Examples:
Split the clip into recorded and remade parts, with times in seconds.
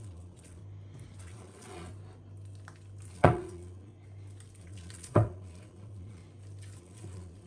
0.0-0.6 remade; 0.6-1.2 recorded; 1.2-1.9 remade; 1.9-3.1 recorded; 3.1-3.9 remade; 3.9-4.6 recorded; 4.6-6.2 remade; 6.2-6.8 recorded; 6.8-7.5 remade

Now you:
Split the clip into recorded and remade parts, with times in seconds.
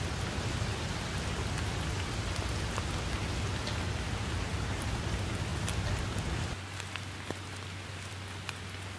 0.0-9.0 recorded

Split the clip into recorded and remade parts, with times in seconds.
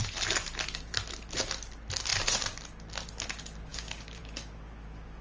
0.0-3.7 recorded; 3.7-4.2 remade; 4.2-5.2 recorded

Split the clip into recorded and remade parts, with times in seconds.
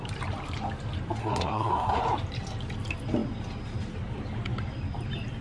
0.0-1.2 recorded; 1.2-2.0 remade; 2.0-5.4 recorded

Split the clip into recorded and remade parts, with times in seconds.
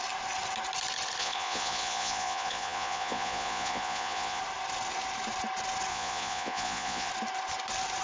0.0-1.2 recorded; 1.2-4.4 remade; 4.4-5.9 recorded; 5.9-7.1 remade; 7.1-8.0 recorded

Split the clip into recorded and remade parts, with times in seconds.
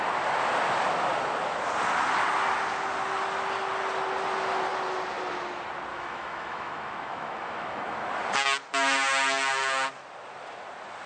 0.0-5.9 recorded; 5.9-8.1 remade; 8.1-11.1 recorded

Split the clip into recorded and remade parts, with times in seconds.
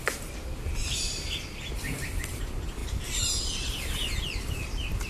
0.0-5.1 recorded